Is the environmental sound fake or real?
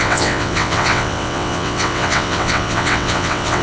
fake